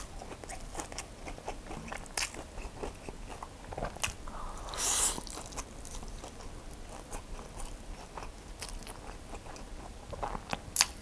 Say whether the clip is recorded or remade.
recorded